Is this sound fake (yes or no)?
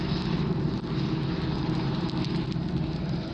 no